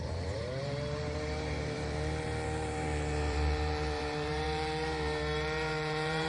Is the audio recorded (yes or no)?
no